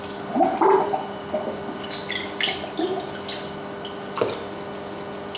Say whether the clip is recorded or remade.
recorded